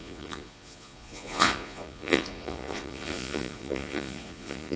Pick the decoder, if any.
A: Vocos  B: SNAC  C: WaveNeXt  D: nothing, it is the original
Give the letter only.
A